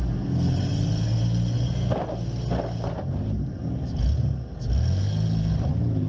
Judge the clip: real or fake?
real